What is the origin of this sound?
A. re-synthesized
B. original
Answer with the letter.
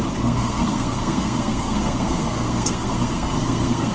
A